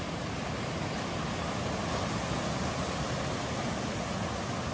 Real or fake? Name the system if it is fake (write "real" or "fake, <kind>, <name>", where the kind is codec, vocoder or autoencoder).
real